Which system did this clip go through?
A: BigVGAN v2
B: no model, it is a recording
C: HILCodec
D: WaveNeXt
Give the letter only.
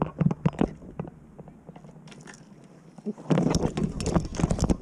B